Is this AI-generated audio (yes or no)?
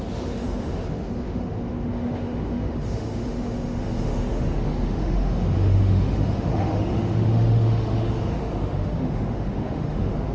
yes